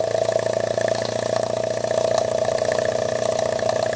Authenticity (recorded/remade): remade